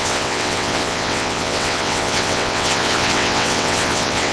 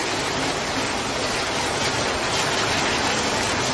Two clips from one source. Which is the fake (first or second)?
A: first